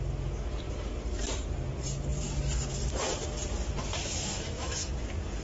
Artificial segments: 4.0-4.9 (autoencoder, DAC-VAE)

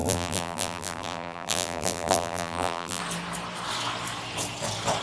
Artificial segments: 0.0-3.0 (vocoder, BigVGAN v2)

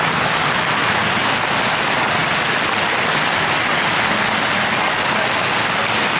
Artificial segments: none